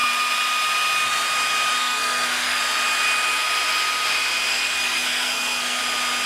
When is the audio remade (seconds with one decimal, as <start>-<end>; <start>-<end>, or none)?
1.8-2.6; 4.5-5.8